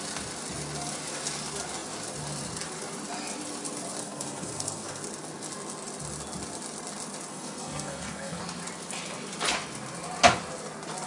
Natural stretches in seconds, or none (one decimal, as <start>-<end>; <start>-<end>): 0.0-4.0; 5.0-7.3; 8.4-11.1

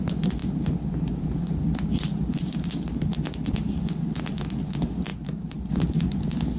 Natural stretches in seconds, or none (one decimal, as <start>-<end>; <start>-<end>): 0.0-6.6

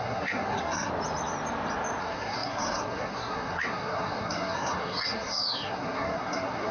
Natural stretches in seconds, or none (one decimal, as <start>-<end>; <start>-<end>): 0.9-2.0

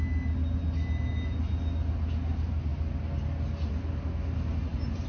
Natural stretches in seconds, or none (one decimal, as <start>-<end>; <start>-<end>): 0.0-5.1

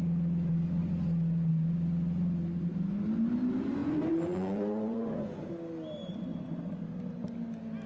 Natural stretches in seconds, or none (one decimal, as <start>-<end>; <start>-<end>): 0.0-3.8; 5.5-7.9

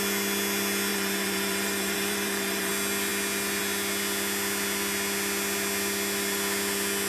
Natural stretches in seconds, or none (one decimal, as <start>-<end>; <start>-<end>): 0.0-0.9; 2.7-7.1

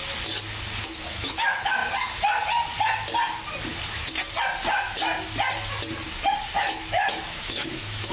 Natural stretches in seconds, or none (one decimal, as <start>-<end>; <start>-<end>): 0.0-1.0; 1.8-6.7

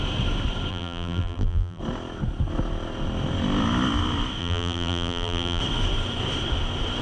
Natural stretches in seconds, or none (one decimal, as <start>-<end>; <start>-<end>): 0.0-0.7; 1.8-4.4; 5.6-7.0